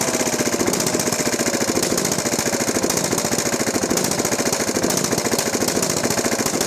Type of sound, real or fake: real